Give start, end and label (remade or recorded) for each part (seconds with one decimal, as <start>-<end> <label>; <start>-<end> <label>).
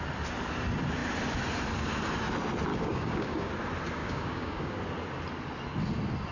0.0-2.7 recorded; 2.7-3.5 remade; 3.5-4.0 recorded; 4.0-4.8 remade; 4.8-6.3 recorded